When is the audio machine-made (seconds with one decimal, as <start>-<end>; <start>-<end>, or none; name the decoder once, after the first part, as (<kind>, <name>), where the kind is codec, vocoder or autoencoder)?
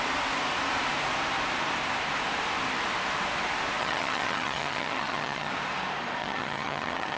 3.8-5.5 (vocoder, HiFi-GAN); 6.2-7.2